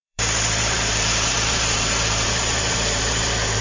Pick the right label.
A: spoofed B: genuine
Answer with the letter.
A